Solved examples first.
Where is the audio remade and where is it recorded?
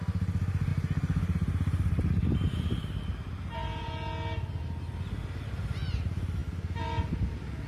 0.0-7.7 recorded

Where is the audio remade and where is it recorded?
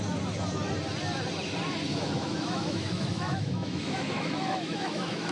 0.0-1.9 recorded; 1.9-5.3 remade